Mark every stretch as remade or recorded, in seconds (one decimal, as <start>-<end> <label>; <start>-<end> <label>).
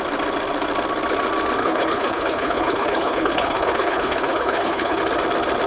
0.0-1.6 recorded; 1.6-5.0 remade; 5.0-5.7 recorded